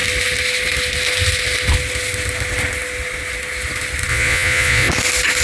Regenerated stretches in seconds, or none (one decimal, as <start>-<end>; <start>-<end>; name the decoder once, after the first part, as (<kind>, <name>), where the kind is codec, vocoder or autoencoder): 4.1-4.9 (vocoder, Vocos)